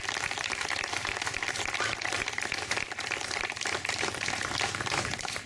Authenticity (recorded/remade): remade